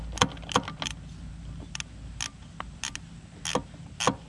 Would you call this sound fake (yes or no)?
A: no